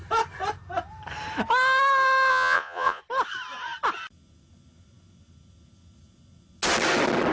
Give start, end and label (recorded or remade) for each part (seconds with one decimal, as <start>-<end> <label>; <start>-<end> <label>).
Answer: 0.0-2.3 recorded; 2.3-3.0 remade; 3.0-7.3 recorded